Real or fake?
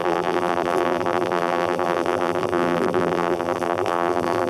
fake